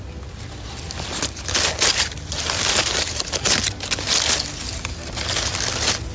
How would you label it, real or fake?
real